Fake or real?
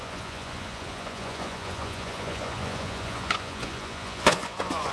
fake